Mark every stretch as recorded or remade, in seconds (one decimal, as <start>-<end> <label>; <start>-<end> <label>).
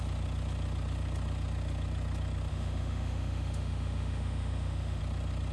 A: 0.0-2.5 recorded; 2.5-5.0 remade; 5.0-5.5 recorded